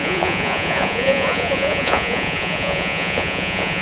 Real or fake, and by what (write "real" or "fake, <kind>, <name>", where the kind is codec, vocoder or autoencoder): fake, vocoder, Vocos